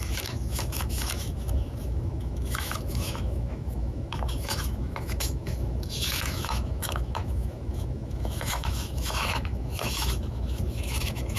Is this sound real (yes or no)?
no